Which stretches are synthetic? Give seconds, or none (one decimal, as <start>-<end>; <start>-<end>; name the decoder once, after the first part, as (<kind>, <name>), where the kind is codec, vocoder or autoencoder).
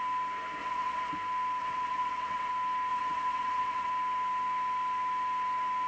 0.6-1.1 (vocoder, WaveNeXt); 1.6-2.5; 2.9-3.9